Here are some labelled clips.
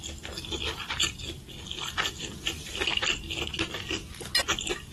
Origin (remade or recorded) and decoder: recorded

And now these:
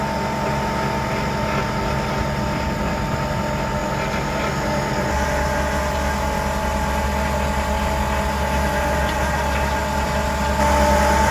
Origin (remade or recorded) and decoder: recorded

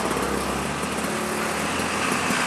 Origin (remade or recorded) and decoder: recorded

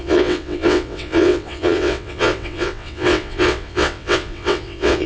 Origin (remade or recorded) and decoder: remade, vocoder, WaveNeXt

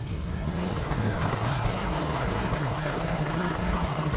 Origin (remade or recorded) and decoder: remade, codec, SNAC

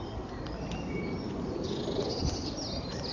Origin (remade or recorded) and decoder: remade, vocoder, BigVGAN v2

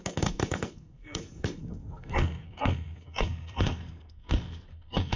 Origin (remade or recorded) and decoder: remade, codec, SNAC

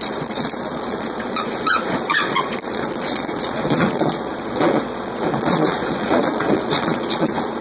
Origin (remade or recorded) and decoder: remade, vocoder, Vocos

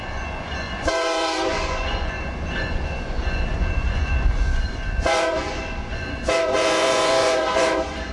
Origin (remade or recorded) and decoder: remade, vocoder, Vocos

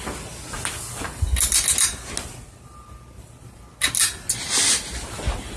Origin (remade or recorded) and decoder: recorded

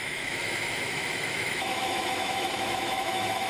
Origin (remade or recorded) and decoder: remade, autoencoder, DAC-VAE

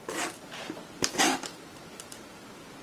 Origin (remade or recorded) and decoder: recorded